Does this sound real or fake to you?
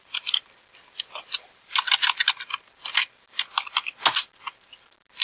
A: real